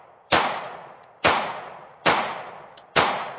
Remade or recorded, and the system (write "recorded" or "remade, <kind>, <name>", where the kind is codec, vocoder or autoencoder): remade, vocoder, Vocos